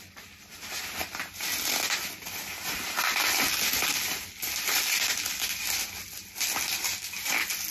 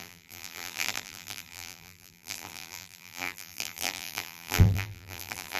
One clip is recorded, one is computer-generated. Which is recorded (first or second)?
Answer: first